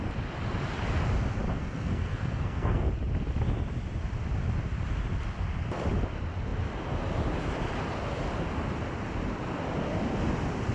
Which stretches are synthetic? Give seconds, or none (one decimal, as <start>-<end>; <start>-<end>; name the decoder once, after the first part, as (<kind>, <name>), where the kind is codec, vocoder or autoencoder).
1.5-2.9 (codec, SNAC)